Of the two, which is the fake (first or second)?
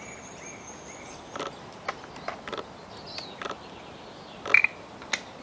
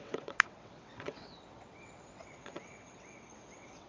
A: second